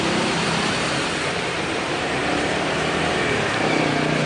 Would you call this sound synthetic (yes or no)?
yes